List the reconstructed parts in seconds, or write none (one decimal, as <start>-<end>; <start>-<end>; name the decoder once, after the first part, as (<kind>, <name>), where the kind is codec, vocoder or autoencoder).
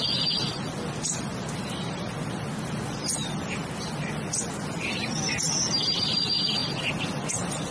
none